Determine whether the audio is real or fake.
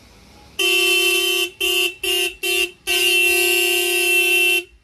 real